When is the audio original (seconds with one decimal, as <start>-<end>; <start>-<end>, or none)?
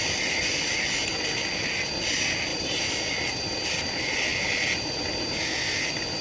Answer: 0.0-2.5; 3.0-6.2